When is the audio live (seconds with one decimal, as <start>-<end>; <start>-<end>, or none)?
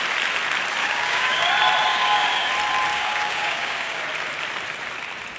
0.0-0.8; 1.5-1.9; 2.5-2.9; 4.0-5.4